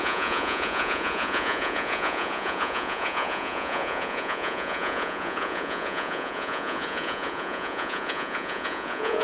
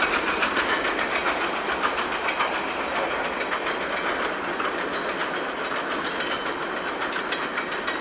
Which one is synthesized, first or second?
first